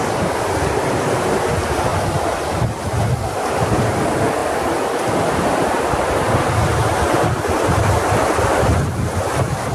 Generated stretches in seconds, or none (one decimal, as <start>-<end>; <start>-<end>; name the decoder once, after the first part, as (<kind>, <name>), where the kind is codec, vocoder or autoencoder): none